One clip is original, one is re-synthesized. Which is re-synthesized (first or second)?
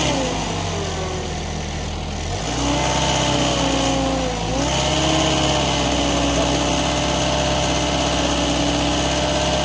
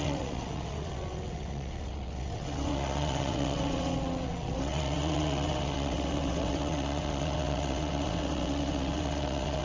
second